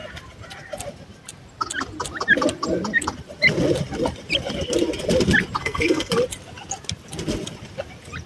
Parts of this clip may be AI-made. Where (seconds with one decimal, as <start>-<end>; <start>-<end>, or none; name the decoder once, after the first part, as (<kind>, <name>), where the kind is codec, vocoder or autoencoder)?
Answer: 5.6-6.1 (codec, SNAC)